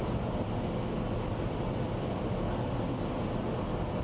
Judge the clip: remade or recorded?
recorded